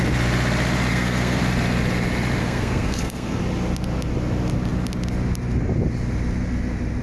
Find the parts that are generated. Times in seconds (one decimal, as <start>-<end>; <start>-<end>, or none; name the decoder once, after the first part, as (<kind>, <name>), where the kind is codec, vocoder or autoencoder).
0.9-1.4 (codec, SNAC); 2.4-3.4